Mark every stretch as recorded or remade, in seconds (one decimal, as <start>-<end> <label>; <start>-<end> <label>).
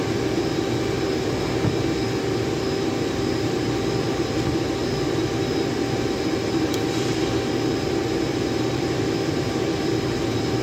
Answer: 0.0-4.8 remade; 4.8-6.4 recorded; 6.4-10.6 remade